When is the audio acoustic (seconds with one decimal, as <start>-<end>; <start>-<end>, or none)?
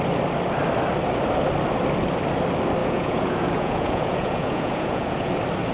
0.0-2.8; 5.3-5.7